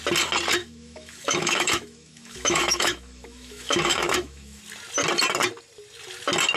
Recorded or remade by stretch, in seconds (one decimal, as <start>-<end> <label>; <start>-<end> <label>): 0.0-0.6 recorded; 0.6-4.6 remade; 4.6-6.6 recorded